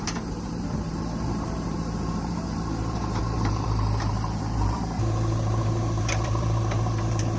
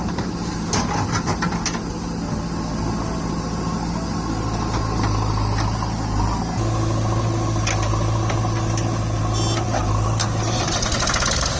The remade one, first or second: first